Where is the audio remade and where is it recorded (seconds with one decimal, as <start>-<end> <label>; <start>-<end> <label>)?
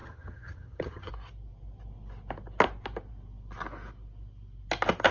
0.0-1.1 remade; 1.1-5.1 recorded